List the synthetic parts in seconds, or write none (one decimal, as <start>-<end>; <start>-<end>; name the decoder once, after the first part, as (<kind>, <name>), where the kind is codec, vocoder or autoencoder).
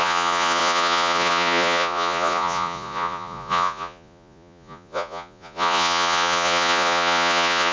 0.0-7.7 (vocoder, Vocos)